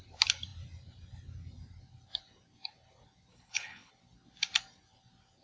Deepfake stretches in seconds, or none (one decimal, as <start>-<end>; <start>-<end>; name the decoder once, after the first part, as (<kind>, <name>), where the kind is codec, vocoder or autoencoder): 3.3-3.9 (codec, HILCodec)